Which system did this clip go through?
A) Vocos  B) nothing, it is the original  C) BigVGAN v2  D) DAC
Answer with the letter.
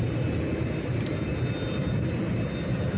B